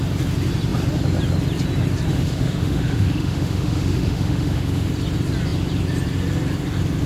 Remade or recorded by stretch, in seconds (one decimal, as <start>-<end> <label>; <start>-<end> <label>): 0.0-2.1 recorded; 2.1-4.9 remade; 4.9-7.1 recorded